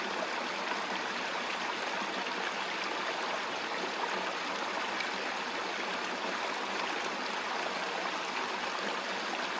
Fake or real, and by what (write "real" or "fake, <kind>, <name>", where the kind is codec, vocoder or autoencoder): real